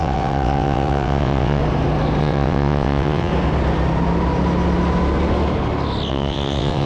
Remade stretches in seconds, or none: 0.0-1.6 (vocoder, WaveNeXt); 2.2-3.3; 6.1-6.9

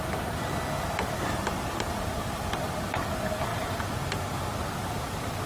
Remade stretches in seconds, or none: none

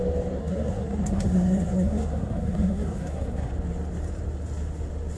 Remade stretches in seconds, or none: 0.4-3.5 (codec, SNAC)

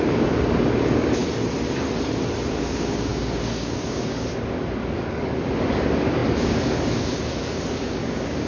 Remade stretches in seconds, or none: 0.0-1.2 (codec, DAC); 2.5-8.5

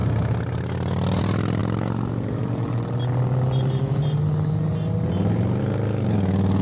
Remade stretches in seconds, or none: none

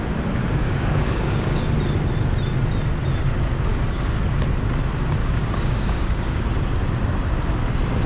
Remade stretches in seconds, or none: 0.4-1.7 (codec, DAC); 3.7-4.2; 5.2-6.4

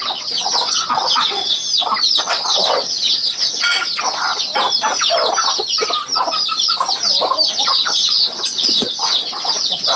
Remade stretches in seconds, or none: 0.0-1.6 (vocoder, WaveNeXt); 2.2-4.5; 7.6-10.0

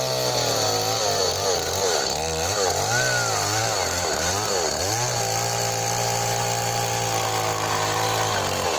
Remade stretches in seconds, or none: none